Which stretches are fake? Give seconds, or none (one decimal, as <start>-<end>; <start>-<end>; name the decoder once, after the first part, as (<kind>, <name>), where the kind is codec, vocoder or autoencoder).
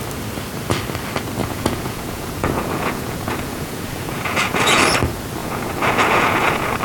1.4-4.8 (vocoder, Vocos); 5.4-6.8